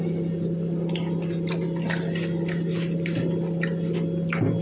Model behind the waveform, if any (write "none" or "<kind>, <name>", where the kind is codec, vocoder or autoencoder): none